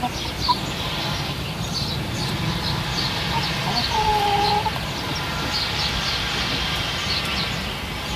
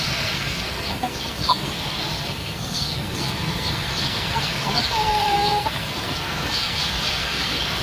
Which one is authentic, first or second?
first